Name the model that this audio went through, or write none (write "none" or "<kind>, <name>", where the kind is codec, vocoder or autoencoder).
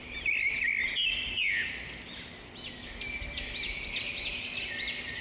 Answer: none